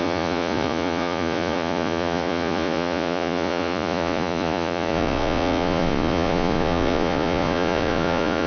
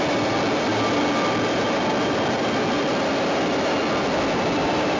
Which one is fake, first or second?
first